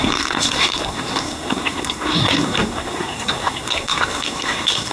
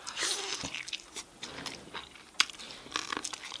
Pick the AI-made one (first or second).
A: first